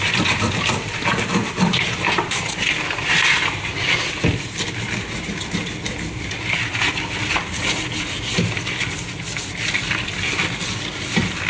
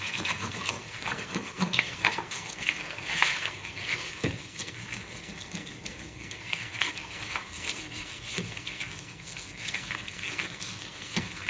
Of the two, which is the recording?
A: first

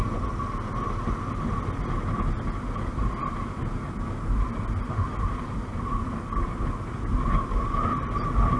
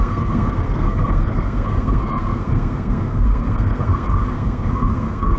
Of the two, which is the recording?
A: first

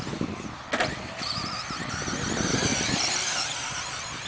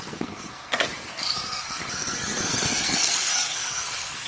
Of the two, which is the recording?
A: first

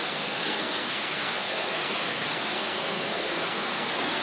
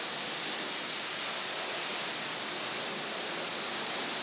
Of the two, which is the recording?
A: second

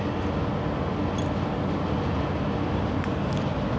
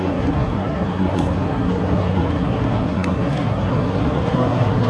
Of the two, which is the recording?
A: first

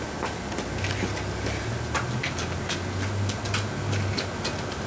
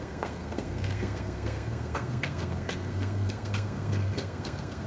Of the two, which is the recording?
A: first